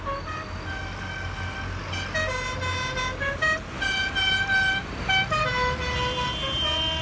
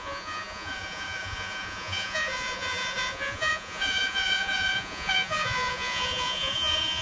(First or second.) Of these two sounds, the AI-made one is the second